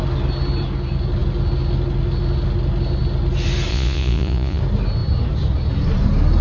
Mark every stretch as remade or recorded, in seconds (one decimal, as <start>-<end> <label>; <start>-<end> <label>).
0.0-3.7 recorded; 3.7-4.6 remade; 4.6-6.4 recorded